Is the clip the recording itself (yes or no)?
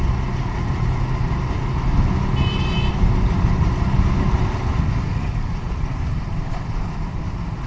yes